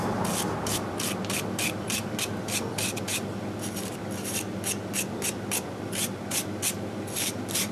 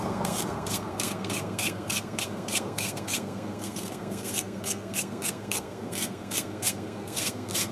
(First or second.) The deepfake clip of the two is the second